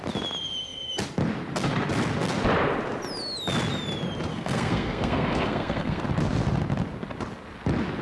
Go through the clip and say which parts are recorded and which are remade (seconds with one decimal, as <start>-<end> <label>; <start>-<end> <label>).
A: 0.0-4.3 recorded; 4.3-6.0 remade; 6.0-8.0 recorded